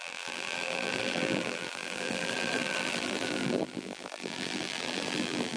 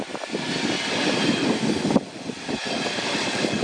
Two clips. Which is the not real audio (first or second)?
first